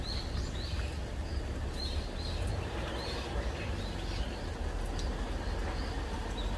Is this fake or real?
real